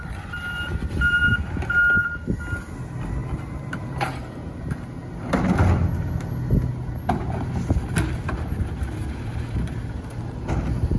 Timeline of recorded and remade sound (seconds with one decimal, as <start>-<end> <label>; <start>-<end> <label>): 0.0-11.0 recorded